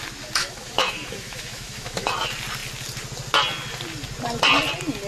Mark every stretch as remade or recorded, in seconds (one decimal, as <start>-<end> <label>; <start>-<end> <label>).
0.0-0.4 recorded; 0.4-2.1 remade; 2.1-5.1 recorded